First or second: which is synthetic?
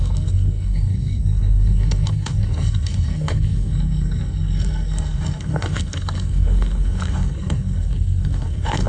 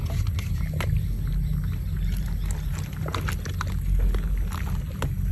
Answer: first